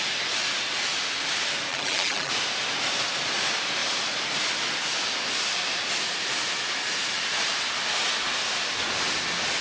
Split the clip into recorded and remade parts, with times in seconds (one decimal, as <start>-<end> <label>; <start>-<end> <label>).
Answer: 0.0-1.7 recorded; 1.7-2.3 remade; 2.3-9.6 recorded